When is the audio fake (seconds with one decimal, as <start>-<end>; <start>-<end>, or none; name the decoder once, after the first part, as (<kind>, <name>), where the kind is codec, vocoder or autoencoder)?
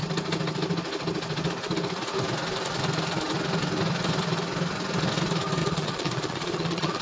5.6-7.0 (vocoder, Vocos)